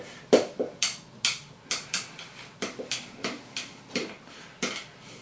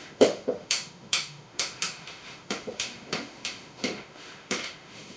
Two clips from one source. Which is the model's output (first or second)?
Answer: second